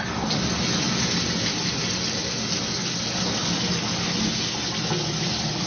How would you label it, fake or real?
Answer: real